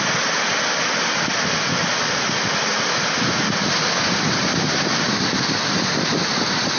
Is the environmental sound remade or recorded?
recorded